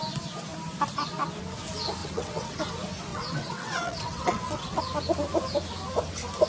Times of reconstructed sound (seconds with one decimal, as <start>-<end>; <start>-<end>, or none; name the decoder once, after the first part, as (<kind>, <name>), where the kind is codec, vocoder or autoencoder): 2.0-2.7 (vocoder, WaveNeXt); 3.1-4.8